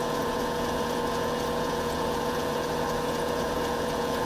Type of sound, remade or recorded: remade